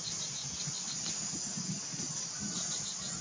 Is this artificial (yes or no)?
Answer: no